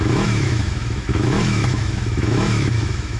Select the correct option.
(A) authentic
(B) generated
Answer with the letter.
B